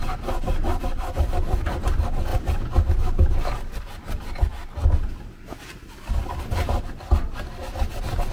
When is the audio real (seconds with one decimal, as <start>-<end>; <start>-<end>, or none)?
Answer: 0.0-8.3